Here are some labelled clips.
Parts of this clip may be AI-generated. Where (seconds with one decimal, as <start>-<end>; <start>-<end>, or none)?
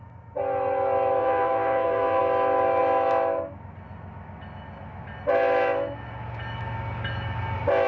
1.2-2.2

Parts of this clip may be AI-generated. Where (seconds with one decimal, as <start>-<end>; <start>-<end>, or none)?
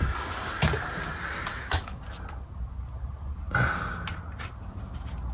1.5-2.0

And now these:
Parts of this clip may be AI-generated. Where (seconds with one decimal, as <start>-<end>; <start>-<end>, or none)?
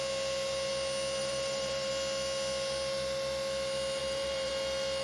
1.2-1.9; 4.0-4.5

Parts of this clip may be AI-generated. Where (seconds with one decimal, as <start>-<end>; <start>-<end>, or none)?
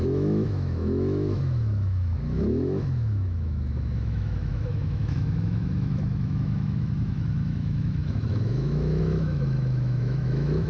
0.0-10.7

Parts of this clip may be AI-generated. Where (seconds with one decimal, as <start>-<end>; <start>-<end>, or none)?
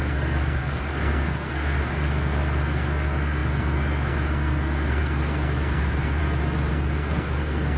0.0-6.2; 6.7-7.8